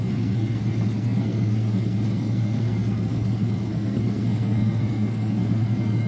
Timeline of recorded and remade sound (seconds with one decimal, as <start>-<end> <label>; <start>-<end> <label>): 0.0-6.1 remade